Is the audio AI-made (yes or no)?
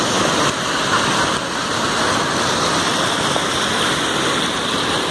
no